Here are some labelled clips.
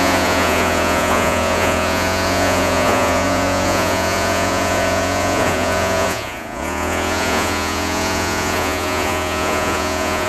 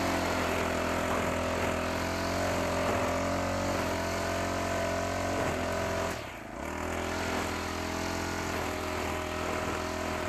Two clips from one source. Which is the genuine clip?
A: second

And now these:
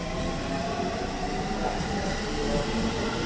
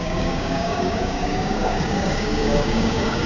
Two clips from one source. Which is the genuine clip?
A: first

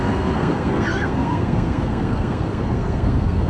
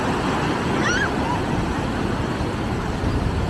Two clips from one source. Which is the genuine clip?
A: second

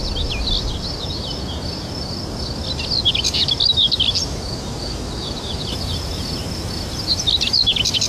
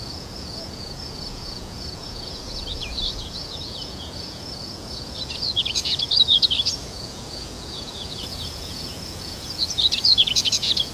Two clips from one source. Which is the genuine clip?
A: first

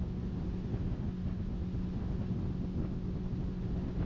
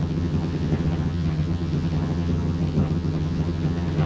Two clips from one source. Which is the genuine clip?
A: first